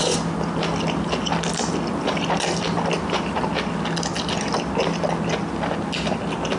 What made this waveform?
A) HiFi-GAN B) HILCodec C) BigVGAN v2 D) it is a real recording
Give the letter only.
D